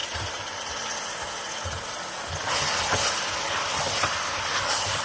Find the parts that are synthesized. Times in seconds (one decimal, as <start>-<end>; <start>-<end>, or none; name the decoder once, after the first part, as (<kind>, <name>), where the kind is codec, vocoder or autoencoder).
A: 0.0-0.7 (vocoder, BigVGAN v2)